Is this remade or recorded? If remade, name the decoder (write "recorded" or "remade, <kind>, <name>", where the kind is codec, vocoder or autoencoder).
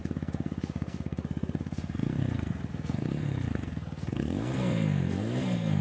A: remade, codec, SNAC